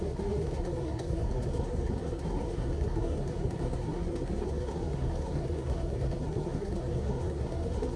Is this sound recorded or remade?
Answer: remade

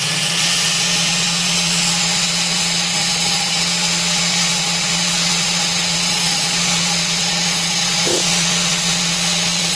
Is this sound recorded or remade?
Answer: remade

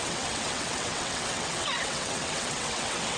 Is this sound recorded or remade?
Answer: remade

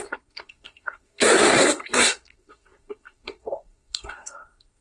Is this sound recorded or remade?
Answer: remade